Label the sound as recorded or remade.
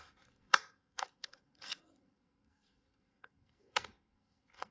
remade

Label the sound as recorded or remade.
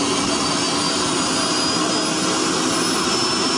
recorded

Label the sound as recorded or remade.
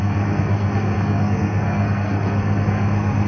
remade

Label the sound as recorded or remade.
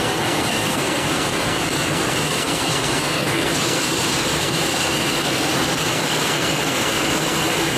remade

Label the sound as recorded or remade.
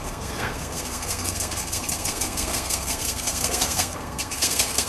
remade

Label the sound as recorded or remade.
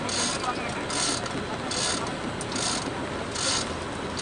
recorded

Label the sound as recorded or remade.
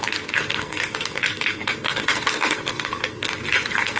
remade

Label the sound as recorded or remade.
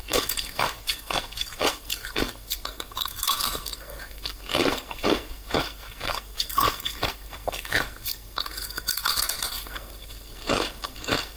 remade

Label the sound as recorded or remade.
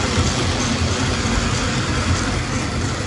recorded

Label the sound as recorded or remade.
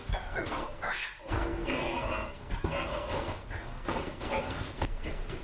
remade